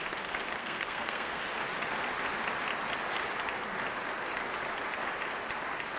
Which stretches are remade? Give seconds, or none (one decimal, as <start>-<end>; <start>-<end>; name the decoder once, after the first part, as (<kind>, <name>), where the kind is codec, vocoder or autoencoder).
0.6-1.4 (codec, SNAC)